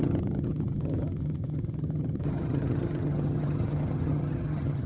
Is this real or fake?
fake